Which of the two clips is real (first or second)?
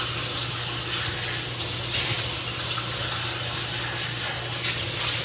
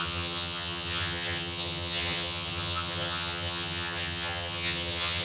first